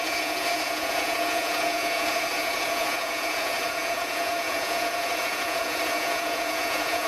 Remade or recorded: remade